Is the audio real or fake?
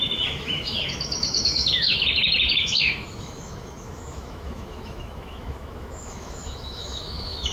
fake